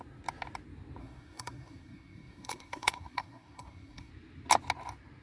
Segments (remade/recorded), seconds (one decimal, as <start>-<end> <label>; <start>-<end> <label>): 0.0-1.0 recorded; 1.0-4.1 remade; 4.1-5.2 recorded